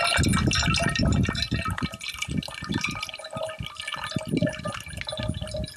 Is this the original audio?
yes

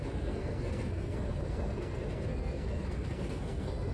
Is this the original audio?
no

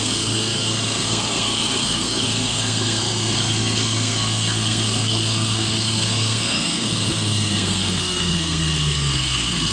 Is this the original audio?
no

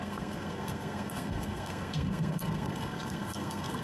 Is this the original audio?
no